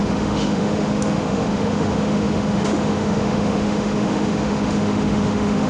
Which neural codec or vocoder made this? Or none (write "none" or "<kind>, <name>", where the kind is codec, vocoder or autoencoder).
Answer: autoencoder, DAC-VAE